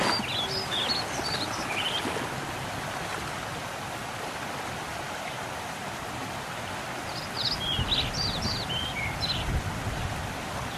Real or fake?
real